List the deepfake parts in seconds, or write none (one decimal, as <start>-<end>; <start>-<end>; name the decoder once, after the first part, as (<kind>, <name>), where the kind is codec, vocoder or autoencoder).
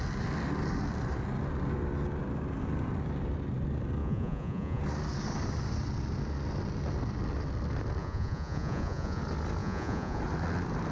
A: 4.0-4.8 (vocoder, Vocos); 8.0-9.2; 9.6-10.2